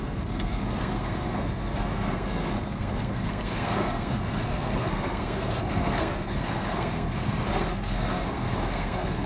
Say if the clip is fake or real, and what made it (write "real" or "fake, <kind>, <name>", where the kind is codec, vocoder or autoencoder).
fake, codec, SNAC